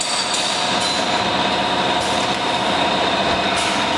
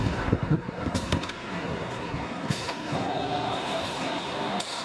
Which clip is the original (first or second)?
first